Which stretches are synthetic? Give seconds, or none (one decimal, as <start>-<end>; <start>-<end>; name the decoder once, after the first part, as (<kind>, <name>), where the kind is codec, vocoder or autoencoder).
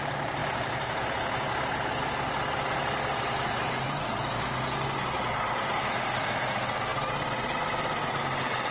none